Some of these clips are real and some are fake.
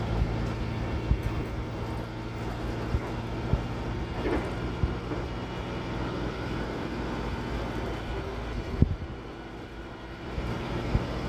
real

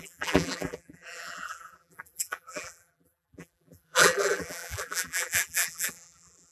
fake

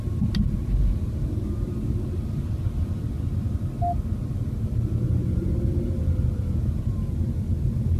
real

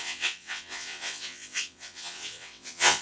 fake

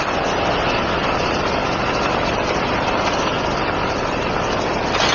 real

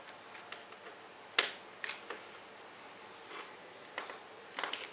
real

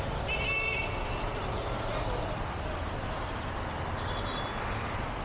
real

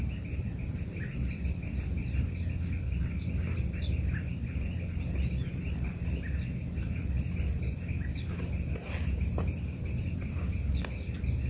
real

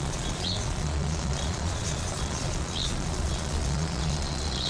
fake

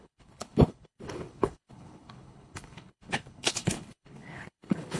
fake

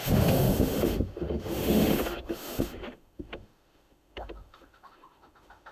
fake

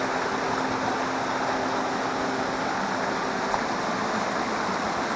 real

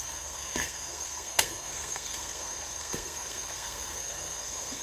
fake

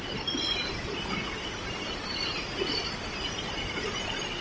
real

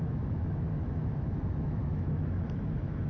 fake